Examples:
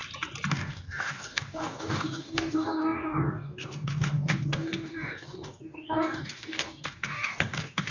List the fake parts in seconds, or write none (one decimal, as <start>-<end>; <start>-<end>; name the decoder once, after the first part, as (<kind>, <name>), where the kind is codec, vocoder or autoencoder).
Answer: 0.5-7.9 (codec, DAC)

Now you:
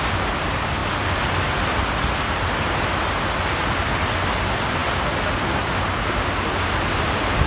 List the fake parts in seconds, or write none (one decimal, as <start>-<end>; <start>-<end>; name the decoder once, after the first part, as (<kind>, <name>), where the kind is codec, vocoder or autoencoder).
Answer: none

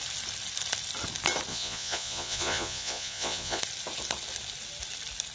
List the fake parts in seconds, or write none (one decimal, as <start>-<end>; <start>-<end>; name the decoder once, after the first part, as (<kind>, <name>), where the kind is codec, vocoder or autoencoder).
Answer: 1.5-3.6 (vocoder, Vocos)